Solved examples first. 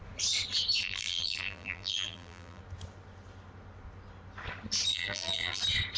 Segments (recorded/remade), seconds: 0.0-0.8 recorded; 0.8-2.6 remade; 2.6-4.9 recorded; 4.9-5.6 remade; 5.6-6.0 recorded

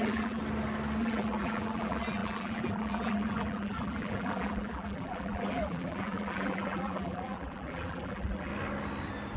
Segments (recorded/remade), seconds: 0.0-0.4 remade; 0.4-1.0 recorded; 1.0-8.5 remade; 8.5-9.4 recorded

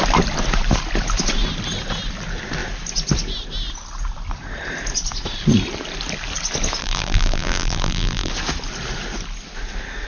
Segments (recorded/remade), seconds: 0.0-6.8 recorded; 6.8-8.3 remade; 8.3-10.1 recorded

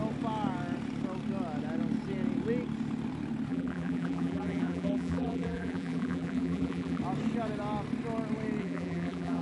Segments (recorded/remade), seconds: 0.0-3.5 recorded; 3.5-7.0 remade; 7.0-8.6 recorded; 8.6-9.4 remade